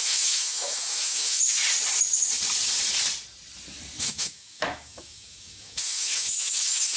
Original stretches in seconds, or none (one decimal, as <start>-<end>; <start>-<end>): 1.6-4.0